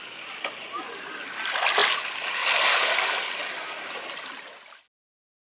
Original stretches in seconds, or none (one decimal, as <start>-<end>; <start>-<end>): 0.0-5.4